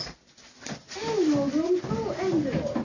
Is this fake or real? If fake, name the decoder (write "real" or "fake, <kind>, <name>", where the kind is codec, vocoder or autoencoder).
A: real